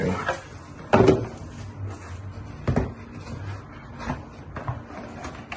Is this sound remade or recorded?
recorded